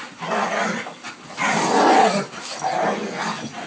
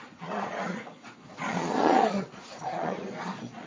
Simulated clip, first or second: second